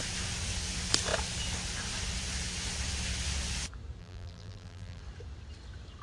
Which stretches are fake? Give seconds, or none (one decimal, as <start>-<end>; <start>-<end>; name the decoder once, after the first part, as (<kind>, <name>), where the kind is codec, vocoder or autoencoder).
4.0-5.0 (vocoder, BigVGAN v2)